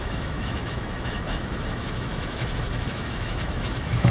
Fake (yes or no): yes